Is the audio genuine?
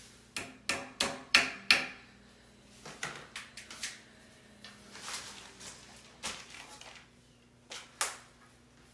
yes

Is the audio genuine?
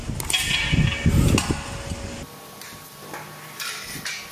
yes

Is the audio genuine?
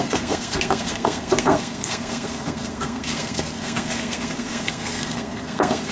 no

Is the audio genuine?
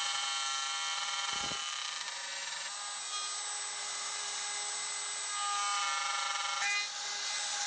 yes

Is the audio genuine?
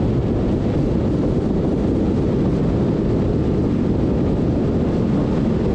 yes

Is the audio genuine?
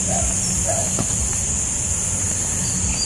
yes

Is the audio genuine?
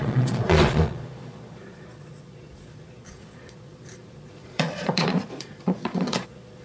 no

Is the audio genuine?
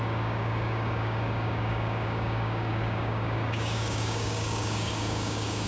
no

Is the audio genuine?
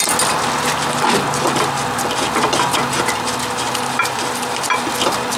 yes